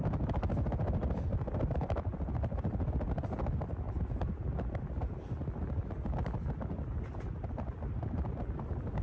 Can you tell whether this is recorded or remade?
recorded